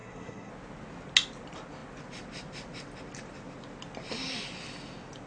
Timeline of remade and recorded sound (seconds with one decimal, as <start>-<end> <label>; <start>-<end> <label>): 0.0-0.5 remade; 0.5-5.3 recorded